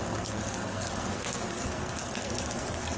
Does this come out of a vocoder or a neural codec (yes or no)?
yes